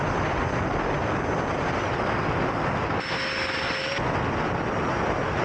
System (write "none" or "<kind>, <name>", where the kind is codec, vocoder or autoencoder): none